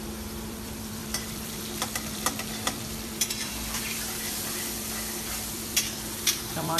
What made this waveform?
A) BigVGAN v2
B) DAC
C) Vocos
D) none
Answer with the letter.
A